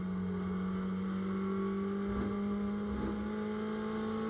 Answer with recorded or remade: recorded